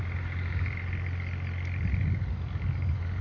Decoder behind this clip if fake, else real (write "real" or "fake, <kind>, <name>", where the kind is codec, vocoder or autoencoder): real